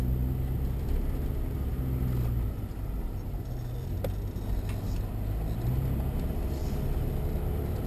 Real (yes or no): yes